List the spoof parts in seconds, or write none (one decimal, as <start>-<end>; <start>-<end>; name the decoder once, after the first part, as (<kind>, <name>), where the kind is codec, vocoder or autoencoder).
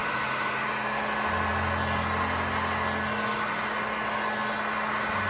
none